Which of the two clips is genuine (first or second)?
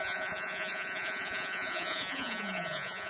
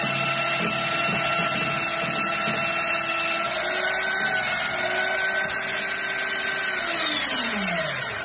second